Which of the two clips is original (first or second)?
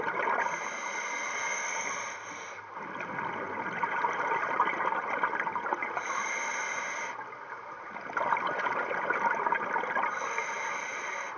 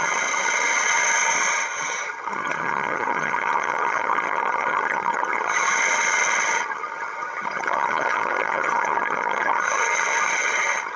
first